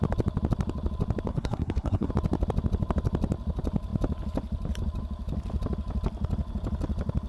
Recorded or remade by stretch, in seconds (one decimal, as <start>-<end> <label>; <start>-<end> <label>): 0.0-1.3 recorded; 1.3-2.1 remade; 2.1-7.3 recorded